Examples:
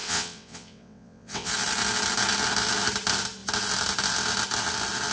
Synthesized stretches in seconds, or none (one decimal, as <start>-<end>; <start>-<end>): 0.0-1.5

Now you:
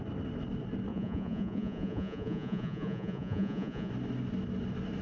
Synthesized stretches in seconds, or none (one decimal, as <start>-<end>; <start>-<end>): 0.9-3.9

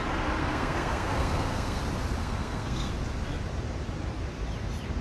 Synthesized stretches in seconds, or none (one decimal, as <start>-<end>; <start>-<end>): 0.4-1.8; 2.2-2.9

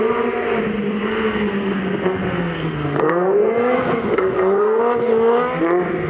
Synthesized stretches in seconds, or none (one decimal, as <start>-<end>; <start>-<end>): 1.1-4.8

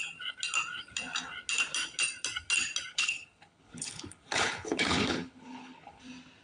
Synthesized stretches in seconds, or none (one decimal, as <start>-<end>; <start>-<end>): 2.9-6.0

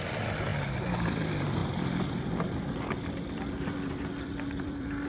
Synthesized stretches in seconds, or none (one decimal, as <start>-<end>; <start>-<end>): 0.0-0.5; 1.1-1.6; 3.1-5.1

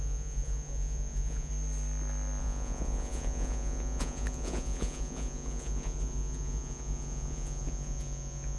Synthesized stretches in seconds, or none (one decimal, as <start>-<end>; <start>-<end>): 0.0-1.5; 2.4-8.6